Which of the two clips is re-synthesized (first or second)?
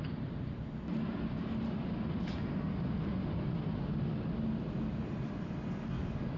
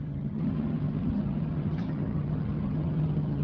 second